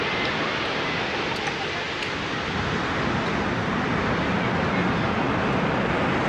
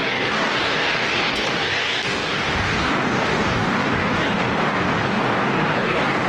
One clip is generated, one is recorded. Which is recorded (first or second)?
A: first